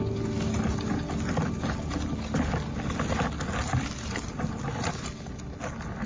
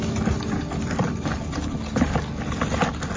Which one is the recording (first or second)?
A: first